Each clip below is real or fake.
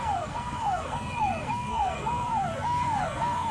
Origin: fake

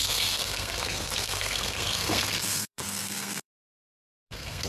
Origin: fake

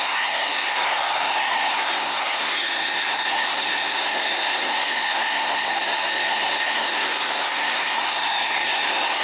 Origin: fake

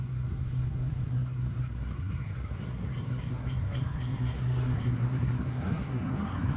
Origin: fake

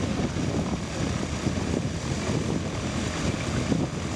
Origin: real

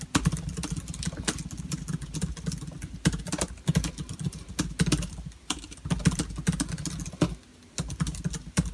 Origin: real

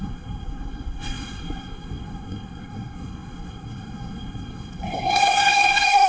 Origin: fake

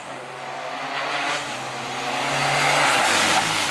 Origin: real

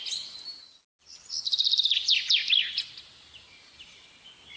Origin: real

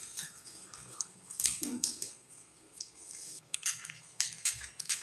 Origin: fake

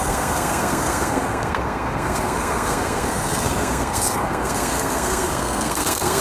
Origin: fake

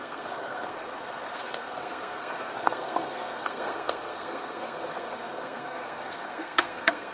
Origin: fake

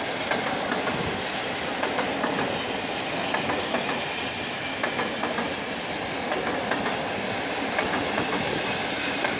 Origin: real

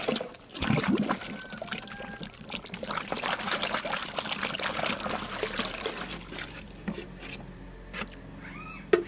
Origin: real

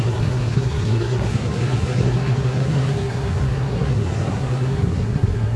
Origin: fake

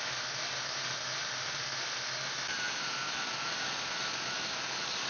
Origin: real